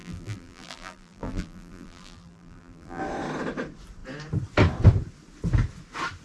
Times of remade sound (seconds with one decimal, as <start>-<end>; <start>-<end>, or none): 0.0-3.0